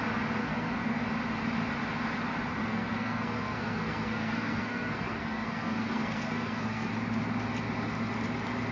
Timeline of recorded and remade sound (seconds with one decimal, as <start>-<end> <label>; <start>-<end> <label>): 0.0-0.4 recorded; 0.4-1.0 remade; 1.0-2.6 recorded; 2.6-6.9 remade; 6.9-8.7 recorded